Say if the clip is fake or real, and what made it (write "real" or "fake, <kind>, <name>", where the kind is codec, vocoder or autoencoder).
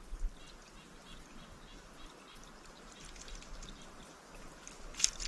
real